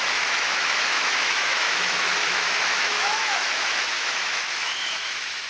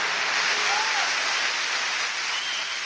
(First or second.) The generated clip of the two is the first